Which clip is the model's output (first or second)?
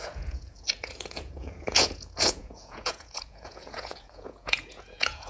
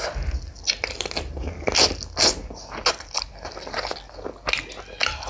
first